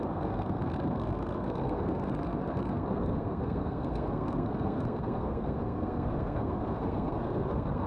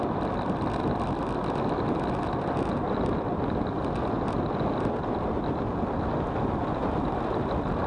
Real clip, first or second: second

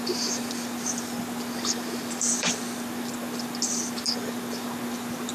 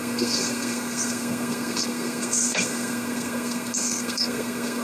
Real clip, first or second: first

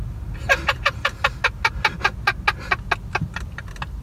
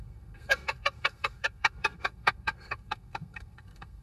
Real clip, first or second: first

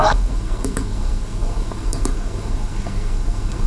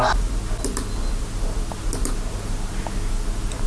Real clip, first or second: second